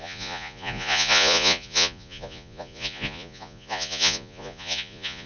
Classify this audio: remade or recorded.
remade